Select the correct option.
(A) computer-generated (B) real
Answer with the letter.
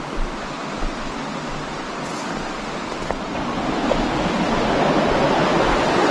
B